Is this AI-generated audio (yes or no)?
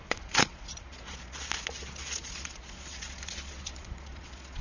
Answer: yes